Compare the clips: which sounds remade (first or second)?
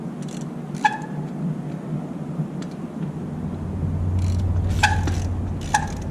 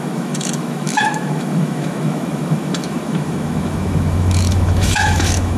second